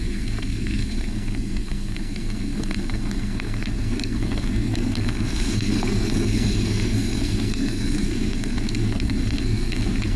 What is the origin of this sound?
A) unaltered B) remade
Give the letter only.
B